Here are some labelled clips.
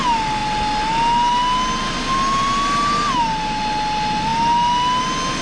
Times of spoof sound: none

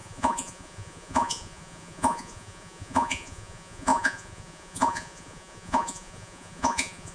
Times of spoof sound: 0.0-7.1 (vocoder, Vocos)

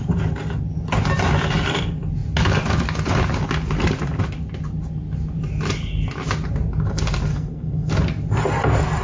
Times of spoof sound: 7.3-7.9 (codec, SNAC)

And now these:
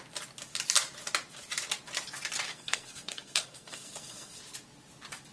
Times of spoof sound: 2.5-4.4 (codec, SNAC)

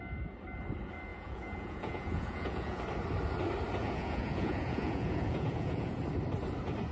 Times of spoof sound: 1.1-2.8 (vocoder, Vocos); 3.8-6.0

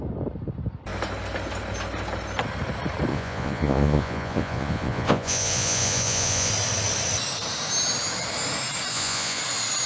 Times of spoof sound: 3.1-6.5 (vocoder, Vocos); 8.9-9.4

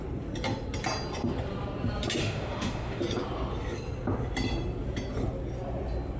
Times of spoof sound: 2.2-3.0 (autoencoder, DAC-VAE)